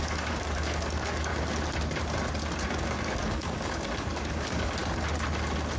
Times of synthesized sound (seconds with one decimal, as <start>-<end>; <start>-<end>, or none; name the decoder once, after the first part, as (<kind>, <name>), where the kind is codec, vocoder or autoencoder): 0.0-1.3 (codec, DAC); 2.7-4.8